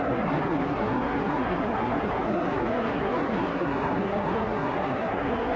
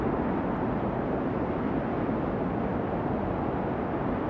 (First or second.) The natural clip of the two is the second